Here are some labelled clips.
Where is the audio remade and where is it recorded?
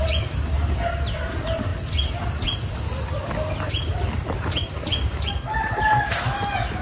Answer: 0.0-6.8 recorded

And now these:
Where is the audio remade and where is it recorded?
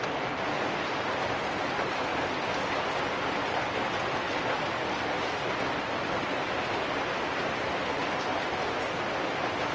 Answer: 0.0-9.7 recorded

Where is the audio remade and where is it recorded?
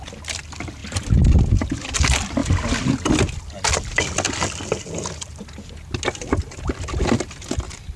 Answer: 0.0-8.0 recorded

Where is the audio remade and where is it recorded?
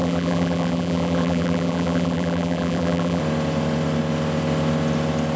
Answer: 0.0-3.2 remade; 3.2-5.4 recorded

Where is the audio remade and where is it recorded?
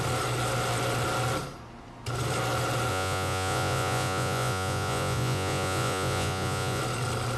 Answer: 0.0-2.9 recorded; 2.9-6.8 remade; 6.8-7.4 recorded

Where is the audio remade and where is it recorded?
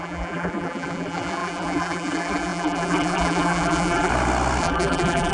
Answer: 0.0-4.1 remade; 4.1-4.6 recorded; 4.6-5.3 remade